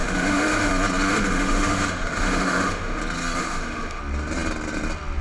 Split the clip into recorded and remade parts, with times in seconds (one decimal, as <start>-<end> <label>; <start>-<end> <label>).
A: 0.0-0.7 remade; 0.7-1.1 recorded; 1.1-3.0 remade; 3.0-3.4 recorded; 3.4-4.0 remade; 4.0-5.2 recorded